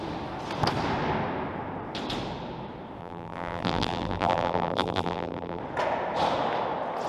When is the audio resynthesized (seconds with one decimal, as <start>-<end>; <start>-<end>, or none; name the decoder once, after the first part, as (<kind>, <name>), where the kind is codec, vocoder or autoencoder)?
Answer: 3.0-5.6 (vocoder, BigVGAN v2)

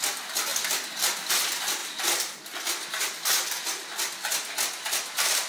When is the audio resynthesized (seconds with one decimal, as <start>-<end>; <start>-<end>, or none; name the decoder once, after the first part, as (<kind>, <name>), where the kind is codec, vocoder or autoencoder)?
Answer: none

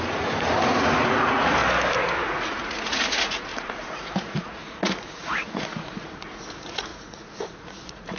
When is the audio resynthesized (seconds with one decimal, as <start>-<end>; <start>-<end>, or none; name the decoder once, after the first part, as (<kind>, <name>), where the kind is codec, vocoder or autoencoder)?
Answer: 0.0-1.6 (vocoder, Vocos); 2.2-8.2

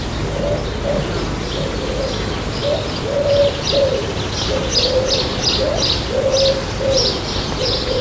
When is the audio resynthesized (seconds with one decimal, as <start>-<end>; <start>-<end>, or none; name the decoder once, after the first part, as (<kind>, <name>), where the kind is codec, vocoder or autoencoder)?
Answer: none

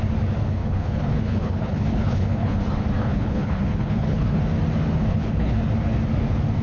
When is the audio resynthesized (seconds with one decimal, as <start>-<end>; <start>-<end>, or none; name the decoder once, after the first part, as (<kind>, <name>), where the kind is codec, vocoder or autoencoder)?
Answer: 0.5-2.6 (codec, HILCodec); 3.0-4.4; 5.1-5.6

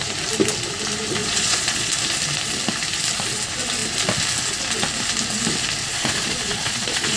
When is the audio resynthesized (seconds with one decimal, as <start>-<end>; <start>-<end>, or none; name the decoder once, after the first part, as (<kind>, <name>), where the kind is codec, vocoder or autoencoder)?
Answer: 1.2-1.9 (vocoder, Vocos); 5.8-7.2